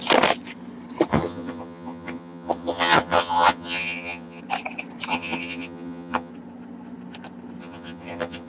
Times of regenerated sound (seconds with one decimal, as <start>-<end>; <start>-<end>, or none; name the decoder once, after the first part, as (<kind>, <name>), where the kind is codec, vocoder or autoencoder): 1.1-4.4 (vocoder, HiFi-GAN); 5.1-6.3; 7.6-8.5